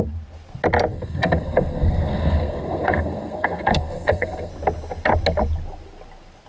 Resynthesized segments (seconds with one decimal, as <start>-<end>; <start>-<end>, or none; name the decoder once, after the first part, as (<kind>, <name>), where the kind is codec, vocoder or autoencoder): 0.9-4.5 (codec, SNAC)